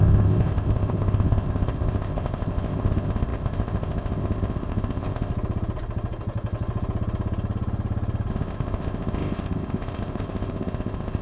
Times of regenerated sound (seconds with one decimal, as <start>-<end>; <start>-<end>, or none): 0.0-5.3; 8.3-11.2